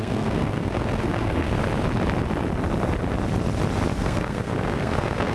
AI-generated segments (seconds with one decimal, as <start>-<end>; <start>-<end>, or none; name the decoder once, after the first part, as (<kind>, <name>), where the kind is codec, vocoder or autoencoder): 0.0-1.6 (codec, SNAC); 4.0-5.3